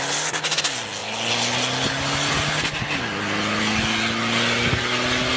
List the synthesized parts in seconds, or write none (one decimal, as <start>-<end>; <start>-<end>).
none